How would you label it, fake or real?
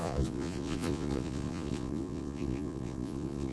fake